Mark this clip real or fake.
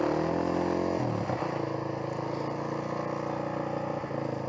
real